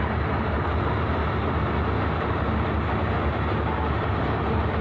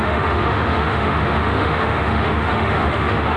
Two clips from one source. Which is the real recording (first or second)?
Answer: first